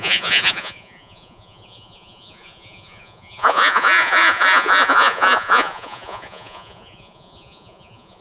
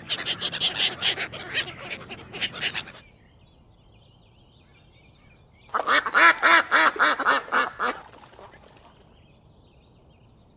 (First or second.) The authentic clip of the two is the second